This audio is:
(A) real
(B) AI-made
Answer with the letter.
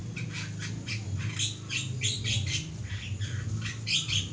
A